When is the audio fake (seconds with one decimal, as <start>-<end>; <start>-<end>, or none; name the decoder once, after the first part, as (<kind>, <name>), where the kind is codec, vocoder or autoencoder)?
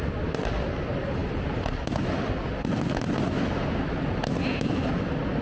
none